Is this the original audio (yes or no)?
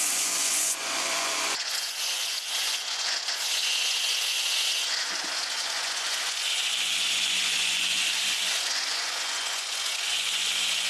no